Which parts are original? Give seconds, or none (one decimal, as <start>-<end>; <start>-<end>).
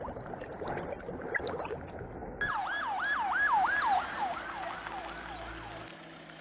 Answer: 0.0-6.4